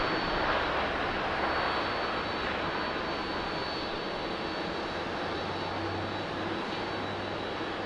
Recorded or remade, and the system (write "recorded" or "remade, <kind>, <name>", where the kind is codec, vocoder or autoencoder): recorded